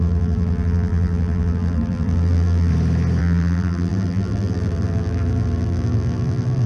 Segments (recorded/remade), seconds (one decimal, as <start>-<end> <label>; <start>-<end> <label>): 0.0-2.7 remade; 2.7-3.2 recorded; 3.2-6.7 remade